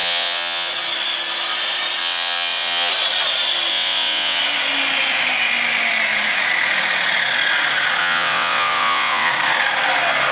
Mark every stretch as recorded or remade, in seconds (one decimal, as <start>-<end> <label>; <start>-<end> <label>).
0.0-0.7 remade; 0.7-2.0 recorded; 2.0-2.9 remade; 2.9-3.7 recorded; 3.7-4.4 remade; 4.4-8.0 recorded; 8.0-9.3 remade; 9.3-10.3 recorded